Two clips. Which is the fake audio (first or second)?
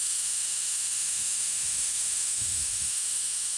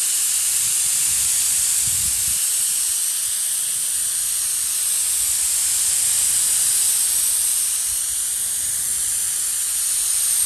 first